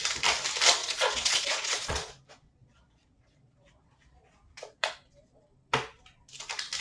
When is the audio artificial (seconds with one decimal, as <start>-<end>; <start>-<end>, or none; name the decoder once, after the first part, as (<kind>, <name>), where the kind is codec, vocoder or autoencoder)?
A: 0.8-2.1 (vocoder, Vocos); 2.6-4.9

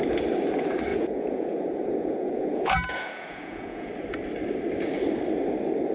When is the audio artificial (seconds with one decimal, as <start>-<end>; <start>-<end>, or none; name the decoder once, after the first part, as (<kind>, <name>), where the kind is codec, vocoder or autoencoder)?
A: 0.9-3.9 (vocoder, Vocos)